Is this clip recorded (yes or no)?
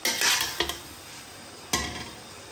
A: yes